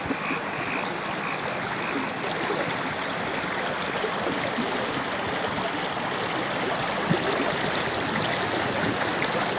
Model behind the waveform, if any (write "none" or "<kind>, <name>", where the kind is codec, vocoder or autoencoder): none